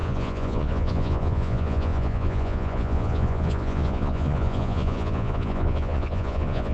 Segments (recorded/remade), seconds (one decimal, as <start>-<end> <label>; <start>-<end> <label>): 0.0-6.7 remade